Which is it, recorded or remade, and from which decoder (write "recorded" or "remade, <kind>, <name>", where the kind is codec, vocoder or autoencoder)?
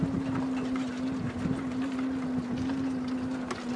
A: recorded